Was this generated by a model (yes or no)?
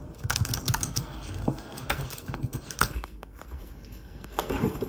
yes